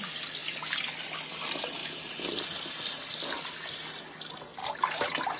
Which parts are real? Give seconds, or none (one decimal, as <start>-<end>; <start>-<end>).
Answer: 0.0-5.4